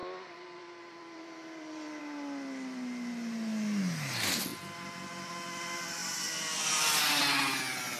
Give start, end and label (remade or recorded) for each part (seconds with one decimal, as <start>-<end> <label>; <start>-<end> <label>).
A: 0.0-2.0 remade; 2.0-6.0 recorded; 6.0-7.2 remade; 7.2-8.0 recorded